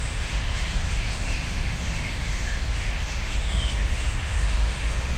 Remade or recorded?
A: remade